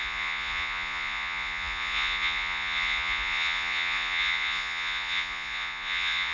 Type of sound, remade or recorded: remade